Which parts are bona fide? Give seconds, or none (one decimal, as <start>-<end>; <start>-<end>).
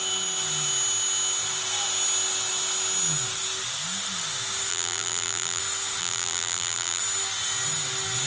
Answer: 0.0-4.7; 5.6-6.0; 7.0-8.3